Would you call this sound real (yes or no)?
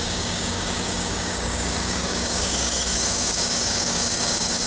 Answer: no